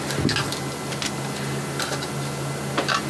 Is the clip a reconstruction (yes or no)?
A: no